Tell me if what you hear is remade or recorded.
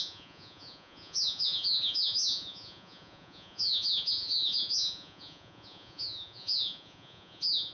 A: remade